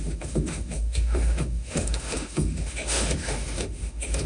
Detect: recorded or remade remade